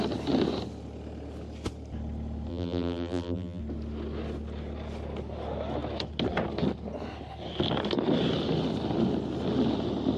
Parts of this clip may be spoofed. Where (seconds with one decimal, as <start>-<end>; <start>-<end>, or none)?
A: 2.5-3.6